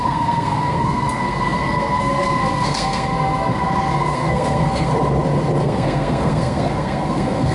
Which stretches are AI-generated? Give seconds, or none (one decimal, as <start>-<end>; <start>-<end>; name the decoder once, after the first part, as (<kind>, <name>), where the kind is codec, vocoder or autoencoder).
0.0-4.9 (codec, SNAC); 5.6-7.5